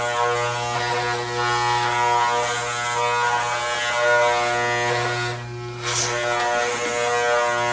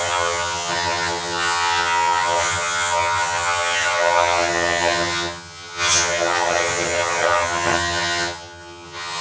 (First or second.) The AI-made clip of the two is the second